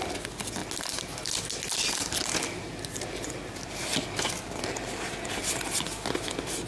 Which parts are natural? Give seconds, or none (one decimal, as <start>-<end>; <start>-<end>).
0.0-6.7